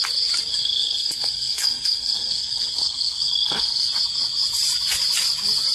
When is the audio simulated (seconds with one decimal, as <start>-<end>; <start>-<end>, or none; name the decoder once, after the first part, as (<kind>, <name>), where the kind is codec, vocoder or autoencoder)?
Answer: 0.5-3.9 (codec, SNAC)